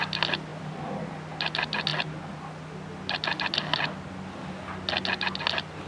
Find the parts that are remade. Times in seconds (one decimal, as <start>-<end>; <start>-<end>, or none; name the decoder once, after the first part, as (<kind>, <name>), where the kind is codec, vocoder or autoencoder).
0.5-1.1 (vocoder, BigVGAN v2)